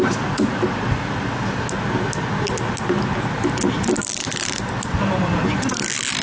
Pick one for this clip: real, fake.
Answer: real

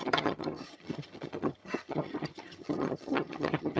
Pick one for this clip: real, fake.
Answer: fake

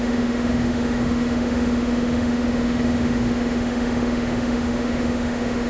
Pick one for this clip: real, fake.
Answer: fake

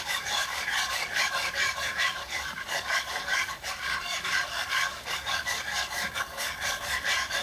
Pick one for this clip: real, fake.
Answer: fake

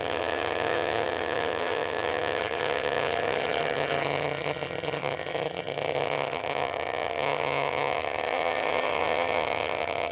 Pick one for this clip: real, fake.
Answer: fake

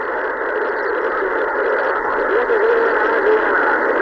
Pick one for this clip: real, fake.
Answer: real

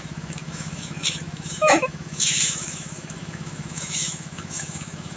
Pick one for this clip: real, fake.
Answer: fake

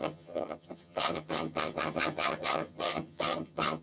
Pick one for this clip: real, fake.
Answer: fake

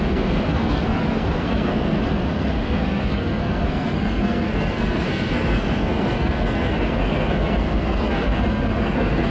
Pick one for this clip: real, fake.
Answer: fake